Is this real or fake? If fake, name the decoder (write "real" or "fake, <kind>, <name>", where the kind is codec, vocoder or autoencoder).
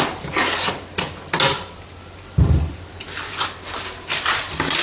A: real